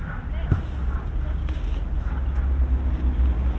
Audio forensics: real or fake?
real